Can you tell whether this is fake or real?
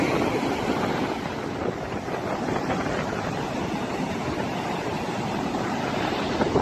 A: real